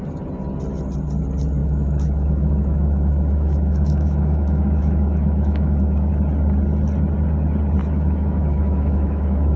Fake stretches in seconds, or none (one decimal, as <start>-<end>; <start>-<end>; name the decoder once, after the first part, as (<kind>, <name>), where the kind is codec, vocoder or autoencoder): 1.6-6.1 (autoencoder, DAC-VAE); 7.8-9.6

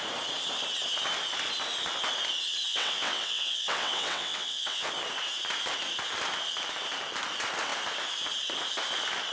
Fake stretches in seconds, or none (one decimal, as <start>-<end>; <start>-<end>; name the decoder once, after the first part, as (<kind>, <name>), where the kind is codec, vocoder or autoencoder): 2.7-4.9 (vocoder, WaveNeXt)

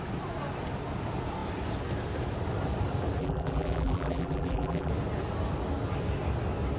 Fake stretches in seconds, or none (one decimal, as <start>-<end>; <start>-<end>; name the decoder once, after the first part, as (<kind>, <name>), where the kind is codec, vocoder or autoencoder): 3.2-4.9 (vocoder, BigVGAN v2)

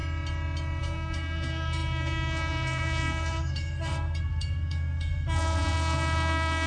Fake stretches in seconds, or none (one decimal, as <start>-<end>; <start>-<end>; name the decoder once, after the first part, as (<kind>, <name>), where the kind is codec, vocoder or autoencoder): 0.8-6.7 (codec, SNAC)

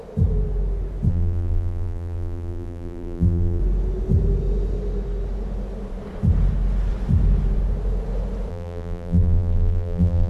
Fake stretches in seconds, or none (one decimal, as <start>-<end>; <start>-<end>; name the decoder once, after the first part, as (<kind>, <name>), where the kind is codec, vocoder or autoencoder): 1.1-3.6 (vocoder, BigVGAN v2); 8.5-10.3

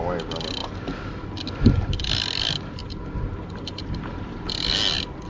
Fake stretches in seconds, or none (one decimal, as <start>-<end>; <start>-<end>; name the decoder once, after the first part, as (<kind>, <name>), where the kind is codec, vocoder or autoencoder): none